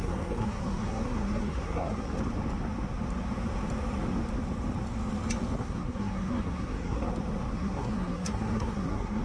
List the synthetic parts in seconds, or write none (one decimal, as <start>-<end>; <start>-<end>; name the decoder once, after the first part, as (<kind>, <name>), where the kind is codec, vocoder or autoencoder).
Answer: 0.0-2.2 (codec, SNAC); 5.6-7.1; 7.5-9.2